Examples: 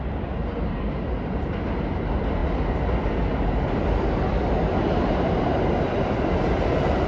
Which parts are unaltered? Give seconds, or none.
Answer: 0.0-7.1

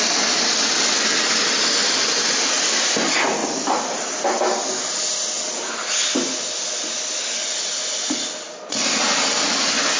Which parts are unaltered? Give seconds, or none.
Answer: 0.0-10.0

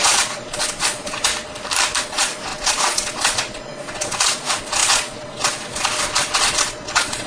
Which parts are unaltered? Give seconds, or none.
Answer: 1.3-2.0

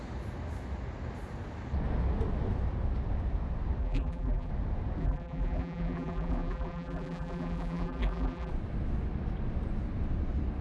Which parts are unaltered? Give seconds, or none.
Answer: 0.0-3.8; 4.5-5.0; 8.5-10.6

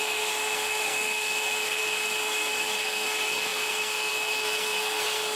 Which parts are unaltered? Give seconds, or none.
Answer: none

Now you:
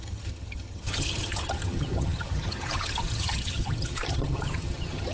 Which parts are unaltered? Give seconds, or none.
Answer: none